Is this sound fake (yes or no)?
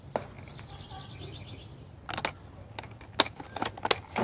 no